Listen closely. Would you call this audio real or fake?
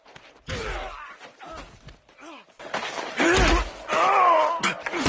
real